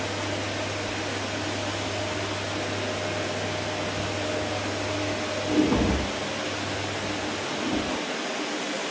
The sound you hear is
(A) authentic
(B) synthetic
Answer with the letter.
A